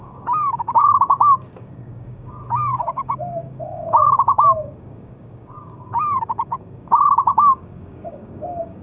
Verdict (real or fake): fake